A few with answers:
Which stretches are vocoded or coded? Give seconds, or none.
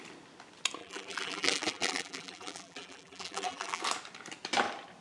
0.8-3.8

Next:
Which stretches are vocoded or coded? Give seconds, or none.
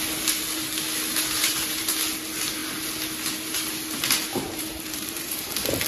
1.4-1.9; 4.3-5.5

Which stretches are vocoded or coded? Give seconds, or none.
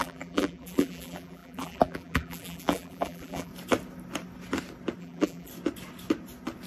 0.0-3.5; 5.0-5.5